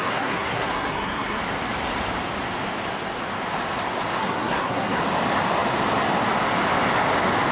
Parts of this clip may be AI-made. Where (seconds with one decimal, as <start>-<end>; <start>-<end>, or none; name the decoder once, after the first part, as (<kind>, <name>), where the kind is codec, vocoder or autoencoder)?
0.0-1.4 (codec, SNAC); 4.2-5.0